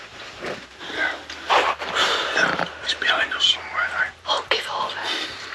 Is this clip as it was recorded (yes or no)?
no